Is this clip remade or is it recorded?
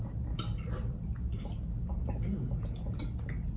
recorded